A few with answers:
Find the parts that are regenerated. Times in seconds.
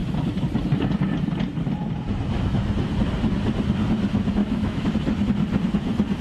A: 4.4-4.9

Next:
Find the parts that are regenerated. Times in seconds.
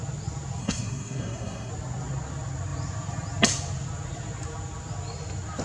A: 0.6-1.7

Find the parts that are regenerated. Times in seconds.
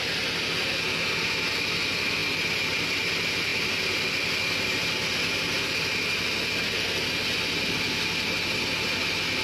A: none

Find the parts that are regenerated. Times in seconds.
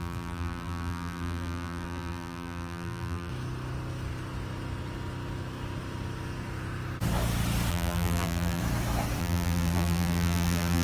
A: 0.0-3.3; 7.7-8.6; 9.2-10.8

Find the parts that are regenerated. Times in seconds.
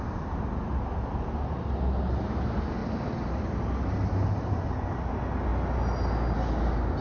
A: none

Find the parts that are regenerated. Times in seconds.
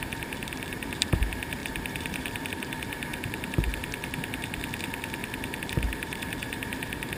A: 0.0-3.1; 5.6-7.2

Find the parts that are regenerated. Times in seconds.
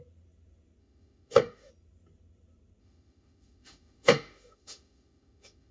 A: 0.8-1.7; 2.8-5.7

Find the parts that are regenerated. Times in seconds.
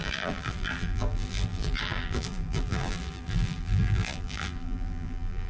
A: 0.0-5.5